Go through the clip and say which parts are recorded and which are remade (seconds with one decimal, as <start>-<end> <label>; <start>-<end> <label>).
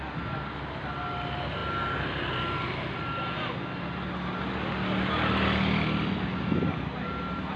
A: 0.0-7.6 recorded